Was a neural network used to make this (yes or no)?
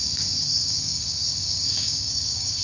yes